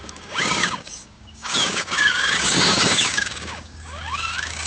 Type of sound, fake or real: fake